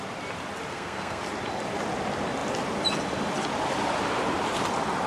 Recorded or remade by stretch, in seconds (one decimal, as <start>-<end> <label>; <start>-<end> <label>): 0.0-0.7 recorded; 0.7-1.2 remade; 1.2-5.1 recorded